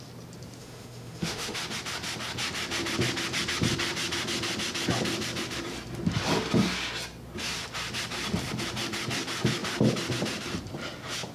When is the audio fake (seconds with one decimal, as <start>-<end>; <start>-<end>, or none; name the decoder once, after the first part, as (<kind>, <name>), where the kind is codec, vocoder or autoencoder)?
0.6-1.6 (autoencoder, DAC-VAE)